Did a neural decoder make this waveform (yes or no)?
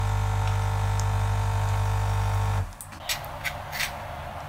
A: no